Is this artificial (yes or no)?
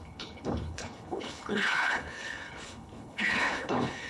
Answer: yes